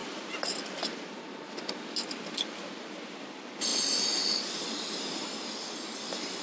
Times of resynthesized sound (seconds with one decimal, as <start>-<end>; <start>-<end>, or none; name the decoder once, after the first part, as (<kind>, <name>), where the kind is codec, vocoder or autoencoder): 0.0-3.3 (vocoder, BigVGAN v2); 3.7-6.4

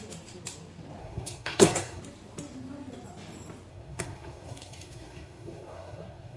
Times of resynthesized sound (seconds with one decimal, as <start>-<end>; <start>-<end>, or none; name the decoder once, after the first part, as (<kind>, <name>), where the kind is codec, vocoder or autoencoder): 1.0-2.0 (codec, SNAC); 3.7-6.4

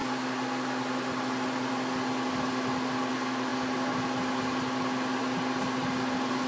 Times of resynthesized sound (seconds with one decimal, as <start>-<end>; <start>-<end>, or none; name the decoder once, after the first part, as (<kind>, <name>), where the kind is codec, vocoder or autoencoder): none

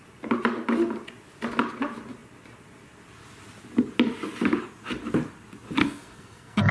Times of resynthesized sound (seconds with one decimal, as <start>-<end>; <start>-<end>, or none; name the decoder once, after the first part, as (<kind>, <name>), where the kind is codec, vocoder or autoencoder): 5.8-6.7 (codec, SNAC)

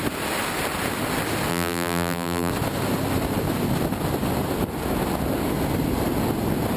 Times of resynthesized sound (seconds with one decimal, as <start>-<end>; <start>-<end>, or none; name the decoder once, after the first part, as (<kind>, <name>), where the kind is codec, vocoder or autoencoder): 1.5-2.5 (vocoder, BigVGAN v2)

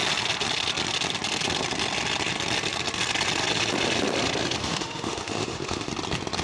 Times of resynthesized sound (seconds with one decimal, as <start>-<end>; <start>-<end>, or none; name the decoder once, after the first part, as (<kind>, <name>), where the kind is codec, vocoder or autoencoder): 4.6-5.9 (autoencoder, DAC-VAE)

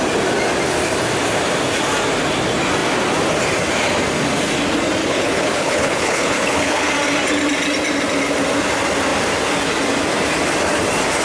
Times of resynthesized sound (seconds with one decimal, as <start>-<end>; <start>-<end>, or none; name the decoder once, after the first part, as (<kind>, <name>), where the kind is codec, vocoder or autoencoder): 5.0-6.9 (codec, HILCodec)